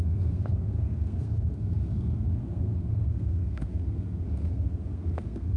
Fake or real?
fake